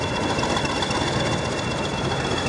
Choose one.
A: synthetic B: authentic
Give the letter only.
B